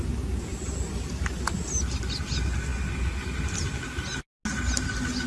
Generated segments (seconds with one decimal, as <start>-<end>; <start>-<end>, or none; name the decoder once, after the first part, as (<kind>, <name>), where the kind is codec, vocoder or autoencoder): none